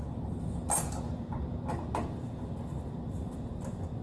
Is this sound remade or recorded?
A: recorded